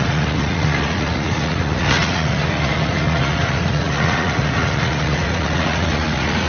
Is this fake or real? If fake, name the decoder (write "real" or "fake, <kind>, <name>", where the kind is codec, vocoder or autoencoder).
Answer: fake, vocoder, Vocos